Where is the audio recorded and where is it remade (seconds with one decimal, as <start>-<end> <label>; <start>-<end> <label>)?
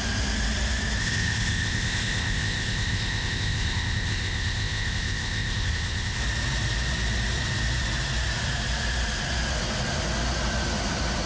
0.0-1.0 recorded; 1.0-6.2 remade; 6.2-11.3 recorded